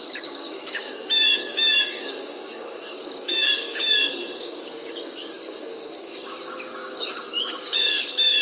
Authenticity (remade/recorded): remade